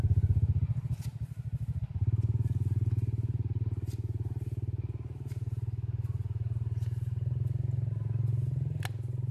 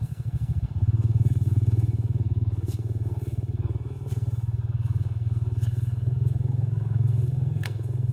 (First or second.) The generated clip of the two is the second